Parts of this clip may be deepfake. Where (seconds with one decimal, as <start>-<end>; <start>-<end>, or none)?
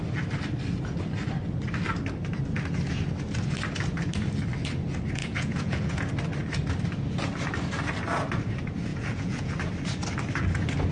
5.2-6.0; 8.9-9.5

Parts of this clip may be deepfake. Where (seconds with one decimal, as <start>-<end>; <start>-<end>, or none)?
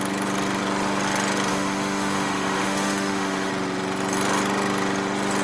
1.5-3.5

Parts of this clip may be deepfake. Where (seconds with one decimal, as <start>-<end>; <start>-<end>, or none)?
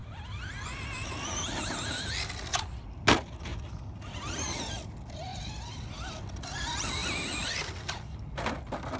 none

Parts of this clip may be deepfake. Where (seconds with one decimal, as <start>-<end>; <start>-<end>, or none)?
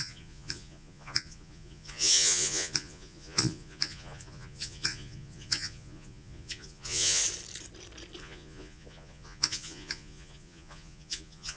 0.0-7.2; 8.2-11.6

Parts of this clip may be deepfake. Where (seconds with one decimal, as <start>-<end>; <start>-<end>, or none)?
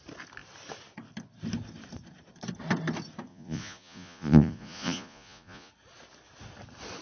3.3-5.7